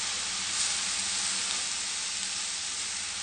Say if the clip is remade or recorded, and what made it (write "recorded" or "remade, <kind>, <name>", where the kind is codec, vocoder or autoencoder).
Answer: recorded